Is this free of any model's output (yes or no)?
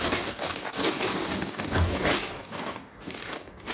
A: no